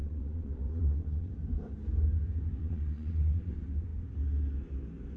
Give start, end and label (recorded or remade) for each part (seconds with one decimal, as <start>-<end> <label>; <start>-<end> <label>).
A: 0.0-1.3 remade; 1.3-2.6 recorded; 2.6-3.4 remade; 3.4-5.2 recorded